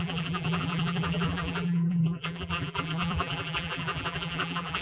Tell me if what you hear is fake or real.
fake